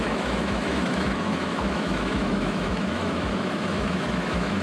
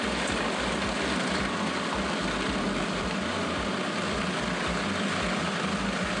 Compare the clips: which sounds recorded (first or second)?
second